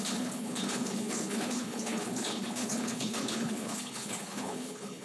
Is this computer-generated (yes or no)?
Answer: yes